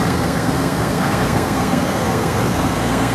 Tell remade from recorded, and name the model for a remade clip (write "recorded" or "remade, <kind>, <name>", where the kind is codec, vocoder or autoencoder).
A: remade, codec, SNAC